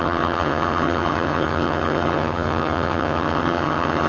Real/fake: fake